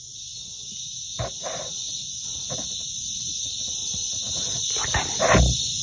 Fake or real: real